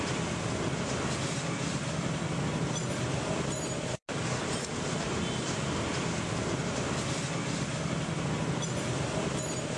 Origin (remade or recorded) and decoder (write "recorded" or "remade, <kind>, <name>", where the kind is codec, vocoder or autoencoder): recorded